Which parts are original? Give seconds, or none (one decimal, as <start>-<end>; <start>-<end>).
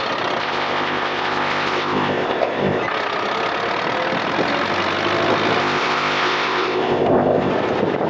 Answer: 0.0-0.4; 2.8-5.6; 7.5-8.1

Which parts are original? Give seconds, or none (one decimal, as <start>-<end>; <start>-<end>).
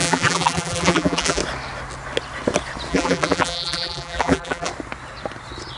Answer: 1.4-2.9; 4.7-5.8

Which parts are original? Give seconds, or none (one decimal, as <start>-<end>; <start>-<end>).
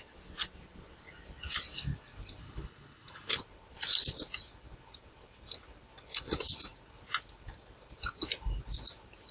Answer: 0.0-2.4; 3.4-9.3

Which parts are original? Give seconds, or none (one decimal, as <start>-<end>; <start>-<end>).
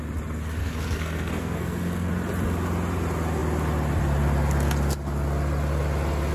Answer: 0.0-0.6; 2.1-6.3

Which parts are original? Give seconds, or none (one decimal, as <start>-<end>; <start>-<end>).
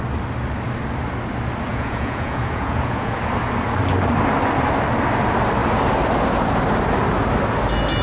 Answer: 0.0-1.7; 3.2-8.0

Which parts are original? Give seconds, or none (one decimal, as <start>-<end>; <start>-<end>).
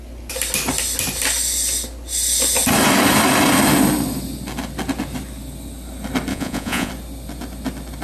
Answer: 0.0-6.3; 6.9-8.0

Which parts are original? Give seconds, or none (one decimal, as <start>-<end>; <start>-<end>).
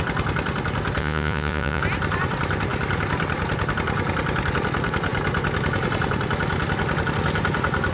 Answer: 0.0-1.0; 1.8-7.9